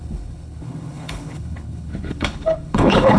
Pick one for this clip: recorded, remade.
remade